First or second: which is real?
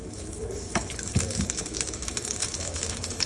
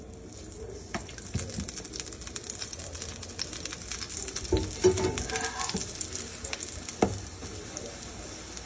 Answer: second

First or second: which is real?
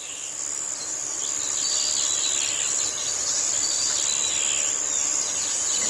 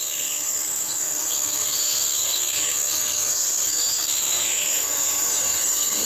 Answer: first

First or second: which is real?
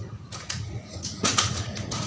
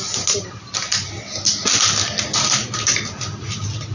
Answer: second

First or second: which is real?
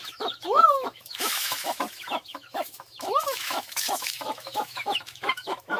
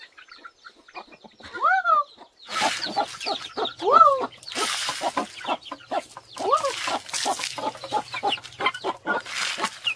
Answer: second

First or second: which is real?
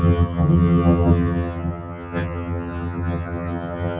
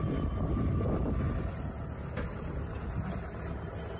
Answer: second